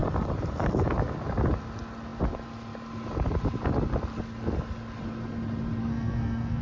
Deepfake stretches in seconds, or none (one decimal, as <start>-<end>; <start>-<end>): 5.8-6.6

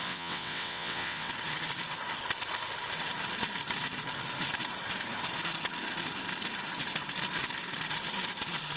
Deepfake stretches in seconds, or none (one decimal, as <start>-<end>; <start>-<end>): 0.0-1.3

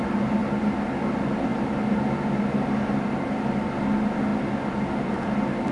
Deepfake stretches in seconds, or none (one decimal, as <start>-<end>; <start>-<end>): none

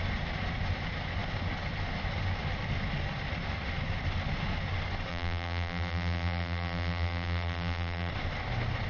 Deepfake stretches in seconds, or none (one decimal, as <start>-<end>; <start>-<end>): 5.1-8.1